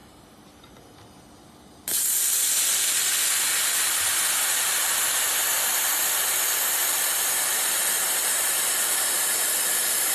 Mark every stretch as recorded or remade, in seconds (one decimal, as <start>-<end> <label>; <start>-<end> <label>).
0.0-3.2 remade; 3.2-4.8 recorded; 4.8-5.9 remade; 5.9-6.8 recorded; 6.8-9.1 remade; 9.1-10.1 recorded